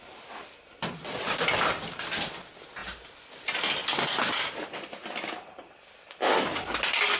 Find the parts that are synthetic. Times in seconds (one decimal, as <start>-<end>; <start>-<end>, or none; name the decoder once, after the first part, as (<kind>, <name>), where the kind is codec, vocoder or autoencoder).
none